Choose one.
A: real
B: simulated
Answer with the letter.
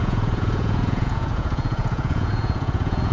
B